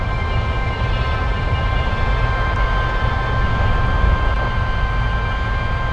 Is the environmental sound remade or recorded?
recorded